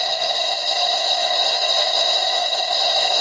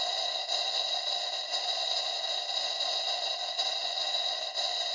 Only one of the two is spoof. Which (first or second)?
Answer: first